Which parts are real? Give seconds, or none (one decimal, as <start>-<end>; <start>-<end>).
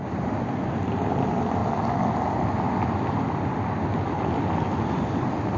0.0-5.6